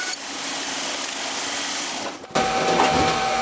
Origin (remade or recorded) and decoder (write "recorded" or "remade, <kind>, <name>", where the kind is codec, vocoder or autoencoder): recorded